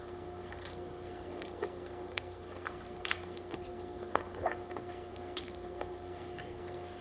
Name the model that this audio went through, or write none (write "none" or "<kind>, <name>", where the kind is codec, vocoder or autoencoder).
codec, SNAC